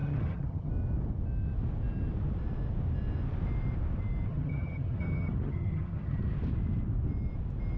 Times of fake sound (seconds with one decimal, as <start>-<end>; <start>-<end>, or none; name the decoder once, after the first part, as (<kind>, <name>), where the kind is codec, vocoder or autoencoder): 0.0-0.7 (vocoder, HiFi-GAN); 4.3-6.2